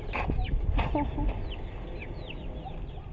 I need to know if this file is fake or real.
real